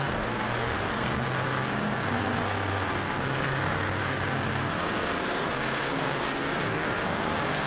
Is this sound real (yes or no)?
no